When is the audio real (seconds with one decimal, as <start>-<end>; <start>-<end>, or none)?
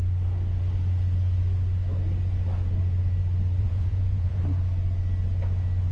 0.0-3.6; 4.4-5.9